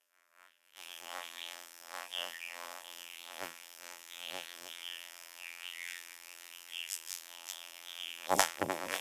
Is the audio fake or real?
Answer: fake